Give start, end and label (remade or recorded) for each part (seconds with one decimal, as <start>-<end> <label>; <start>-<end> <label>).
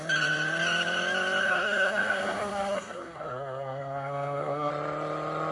0.0-1.4 recorded; 1.4-4.7 remade; 4.7-5.5 recorded